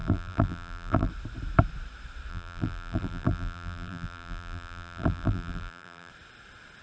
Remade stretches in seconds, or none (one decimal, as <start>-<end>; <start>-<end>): 0.0-1.1; 2.3-6.1